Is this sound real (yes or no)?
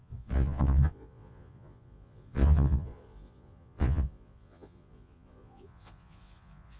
no